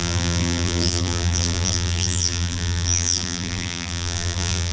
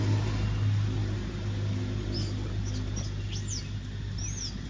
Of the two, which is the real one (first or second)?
second